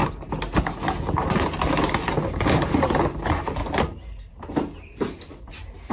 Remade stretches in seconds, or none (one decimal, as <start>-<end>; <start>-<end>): none